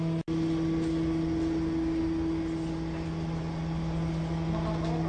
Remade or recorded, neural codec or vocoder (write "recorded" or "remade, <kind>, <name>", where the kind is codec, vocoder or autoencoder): recorded